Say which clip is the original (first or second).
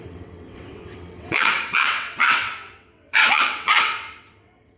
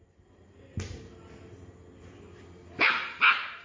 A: second